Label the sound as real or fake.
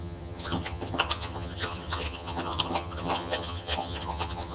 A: fake